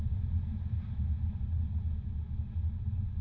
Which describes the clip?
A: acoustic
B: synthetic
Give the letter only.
A